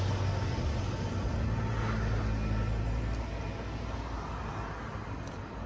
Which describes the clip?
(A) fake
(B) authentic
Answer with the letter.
B